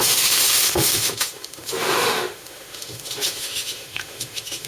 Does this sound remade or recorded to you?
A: remade